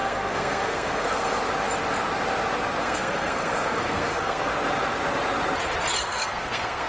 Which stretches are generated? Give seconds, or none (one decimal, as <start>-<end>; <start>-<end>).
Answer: 0.0-1.4; 2.8-4.5; 6.0-6.9